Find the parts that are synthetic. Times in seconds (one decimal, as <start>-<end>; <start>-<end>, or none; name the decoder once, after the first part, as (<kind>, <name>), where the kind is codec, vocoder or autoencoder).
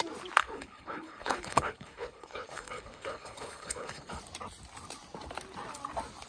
0.4-4.2 (codec, HILCodec)